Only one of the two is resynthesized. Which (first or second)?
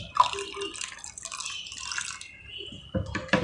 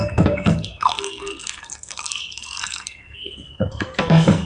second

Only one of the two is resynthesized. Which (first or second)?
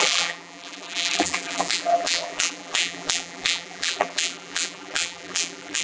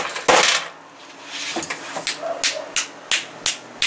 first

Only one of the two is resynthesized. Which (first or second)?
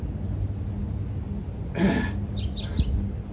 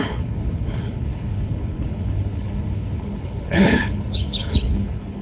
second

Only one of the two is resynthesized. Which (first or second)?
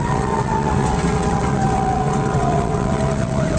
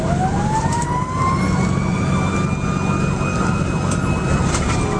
first